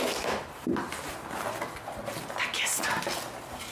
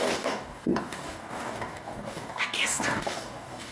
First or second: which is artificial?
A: second